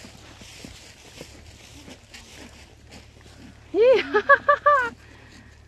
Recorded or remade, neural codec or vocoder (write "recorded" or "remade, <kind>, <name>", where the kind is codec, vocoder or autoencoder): recorded